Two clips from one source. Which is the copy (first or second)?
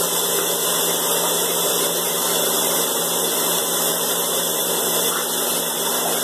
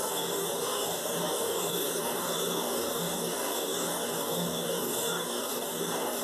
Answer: second